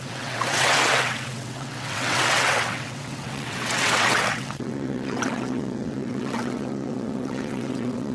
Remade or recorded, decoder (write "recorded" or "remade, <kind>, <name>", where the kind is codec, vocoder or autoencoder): remade, vocoder, WaveNeXt